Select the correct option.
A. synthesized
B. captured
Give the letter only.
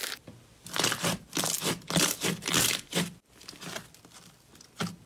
B